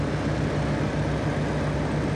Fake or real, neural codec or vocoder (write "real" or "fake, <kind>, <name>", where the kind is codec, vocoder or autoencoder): real